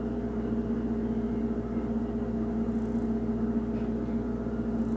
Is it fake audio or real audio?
real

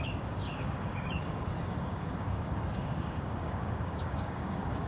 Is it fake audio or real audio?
fake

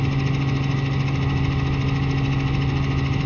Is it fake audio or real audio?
real